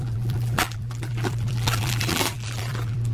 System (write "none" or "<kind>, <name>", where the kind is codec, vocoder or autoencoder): vocoder, BigVGAN v2